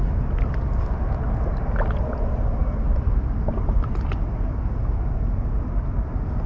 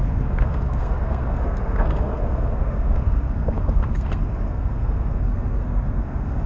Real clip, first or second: first